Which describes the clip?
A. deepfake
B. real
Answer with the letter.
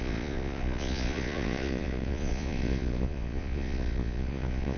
A